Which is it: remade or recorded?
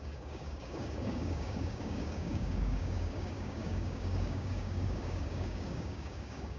remade